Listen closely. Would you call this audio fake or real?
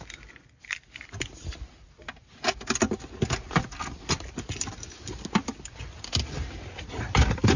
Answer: real